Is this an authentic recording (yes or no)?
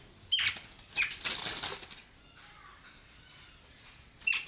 yes